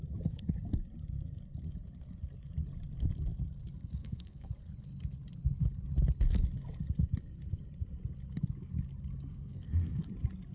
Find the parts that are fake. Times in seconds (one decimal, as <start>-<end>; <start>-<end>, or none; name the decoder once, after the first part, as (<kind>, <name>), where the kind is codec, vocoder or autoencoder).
4.0-4.5 (codec, SNAC); 9.3-10.0